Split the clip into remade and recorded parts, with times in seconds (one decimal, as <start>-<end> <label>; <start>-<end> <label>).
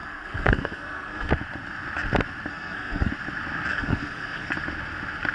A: 0.0-1.3 remade; 1.3-2.5 recorded; 2.5-3.1 remade; 3.1-3.7 recorded; 3.7-4.5 remade; 4.5-5.3 recorded